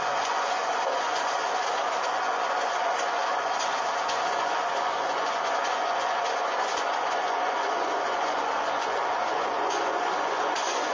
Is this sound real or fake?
fake